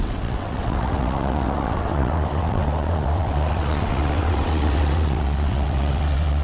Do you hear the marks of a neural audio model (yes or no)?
yes